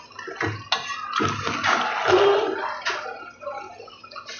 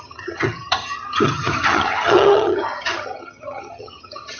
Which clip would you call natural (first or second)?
first